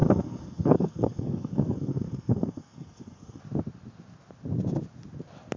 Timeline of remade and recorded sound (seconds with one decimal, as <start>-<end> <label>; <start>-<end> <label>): 0.0-3.4 remade; 3.4-5.6 recorded